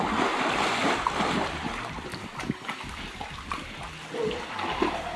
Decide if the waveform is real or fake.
real